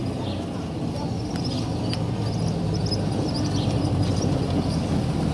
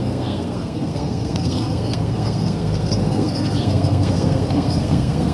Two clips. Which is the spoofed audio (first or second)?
second